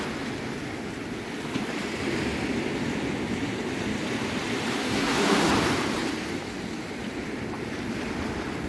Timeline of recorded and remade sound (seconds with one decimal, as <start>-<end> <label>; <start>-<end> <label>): 0.0-4.8 recorded; 4.8-5.5 remade; 5.5-8.7 recorded